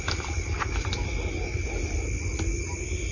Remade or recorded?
recorded